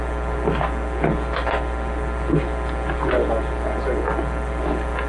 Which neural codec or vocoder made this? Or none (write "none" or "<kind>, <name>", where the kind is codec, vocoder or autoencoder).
none